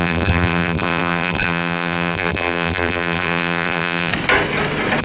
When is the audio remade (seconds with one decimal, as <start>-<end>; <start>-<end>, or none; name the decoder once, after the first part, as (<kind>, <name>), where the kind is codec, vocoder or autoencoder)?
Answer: 0.0-4.1 (vocoder, BigVGAN v2)